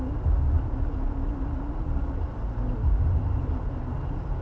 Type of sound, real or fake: real